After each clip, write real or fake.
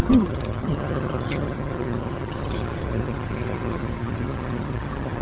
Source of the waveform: fake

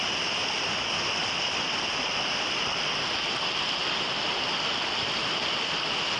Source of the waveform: real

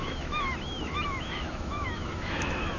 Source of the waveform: fake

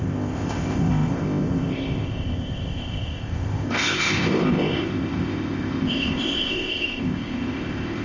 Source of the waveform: fake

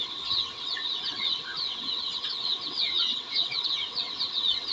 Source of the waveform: fake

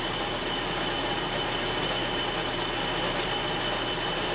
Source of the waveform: real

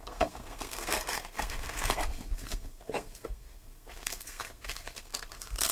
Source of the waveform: fake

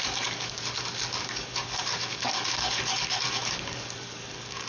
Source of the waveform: fake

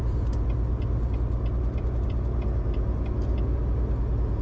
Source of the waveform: real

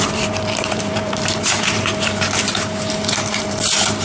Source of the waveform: fake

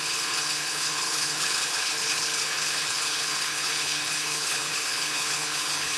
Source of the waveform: fake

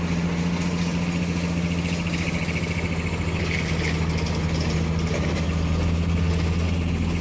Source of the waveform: real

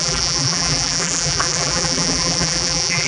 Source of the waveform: fake